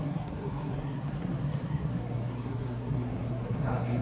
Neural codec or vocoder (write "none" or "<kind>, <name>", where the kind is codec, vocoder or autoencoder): codec, SNAC